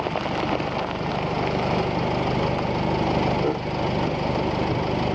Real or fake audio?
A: real